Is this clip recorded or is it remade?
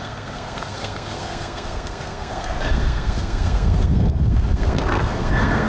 remade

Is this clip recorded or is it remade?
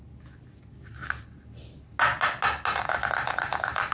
recorded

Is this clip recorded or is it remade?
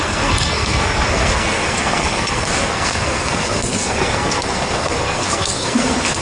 remade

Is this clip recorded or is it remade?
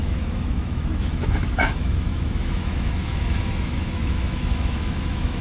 remade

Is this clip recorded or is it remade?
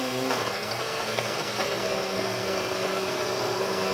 remade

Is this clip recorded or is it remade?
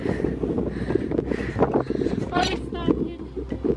recorded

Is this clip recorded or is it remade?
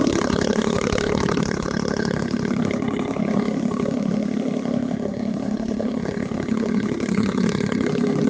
remade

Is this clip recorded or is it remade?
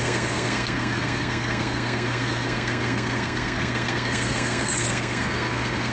remade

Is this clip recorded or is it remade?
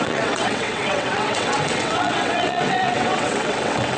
remade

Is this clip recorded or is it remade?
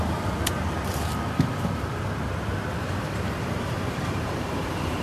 remade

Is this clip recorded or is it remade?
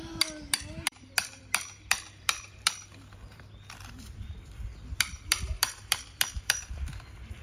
remade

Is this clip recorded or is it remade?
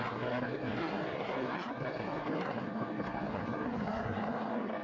remade